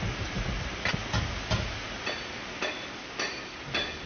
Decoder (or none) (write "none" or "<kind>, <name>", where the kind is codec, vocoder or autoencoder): none